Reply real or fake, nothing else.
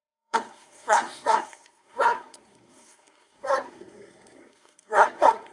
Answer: fake